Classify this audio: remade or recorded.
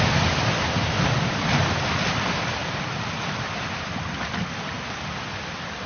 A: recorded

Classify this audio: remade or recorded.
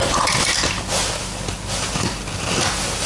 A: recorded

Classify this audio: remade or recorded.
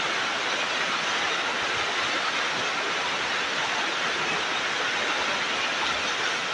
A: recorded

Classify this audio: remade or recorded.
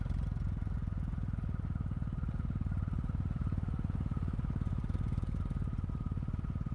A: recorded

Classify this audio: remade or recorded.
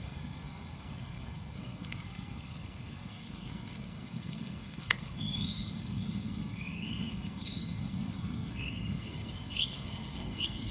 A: remade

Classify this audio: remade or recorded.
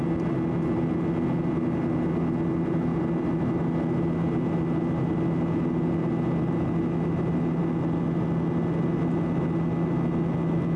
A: recorded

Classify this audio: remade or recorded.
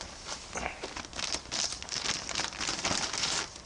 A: recorded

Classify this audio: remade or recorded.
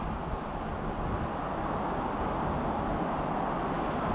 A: recorded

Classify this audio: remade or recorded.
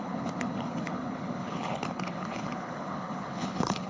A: remade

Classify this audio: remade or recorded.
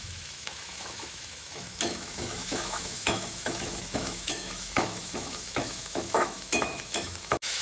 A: remade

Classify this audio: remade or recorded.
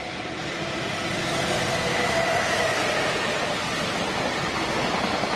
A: recorded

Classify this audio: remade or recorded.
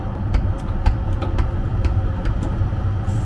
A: recorded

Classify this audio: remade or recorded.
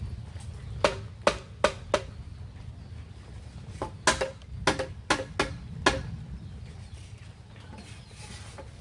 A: recorded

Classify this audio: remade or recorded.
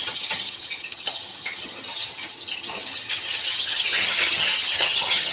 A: remade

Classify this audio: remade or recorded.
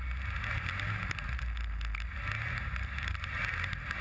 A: recorded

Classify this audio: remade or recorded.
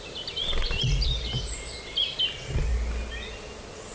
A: recorded